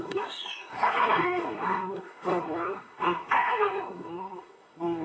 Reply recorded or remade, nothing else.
remade